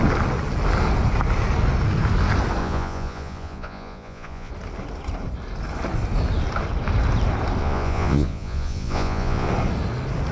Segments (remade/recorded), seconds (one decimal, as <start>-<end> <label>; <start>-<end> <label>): 0.0-2.6 recorded; 2.6-4.5 remade; 4.5-7.6 recorded; 7.6-9.5 remade; 9.5-10.3 recorded